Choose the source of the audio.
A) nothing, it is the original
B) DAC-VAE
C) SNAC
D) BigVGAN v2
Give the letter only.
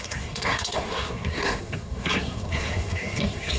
C